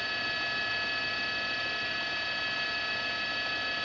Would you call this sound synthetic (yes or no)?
no